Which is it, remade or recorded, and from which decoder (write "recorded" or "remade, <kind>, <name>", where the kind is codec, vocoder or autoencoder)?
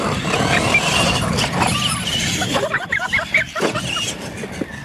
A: remade, vocoder, BigVGAN v2